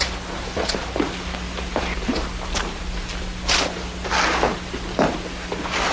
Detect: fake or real real